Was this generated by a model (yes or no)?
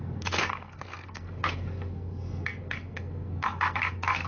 yes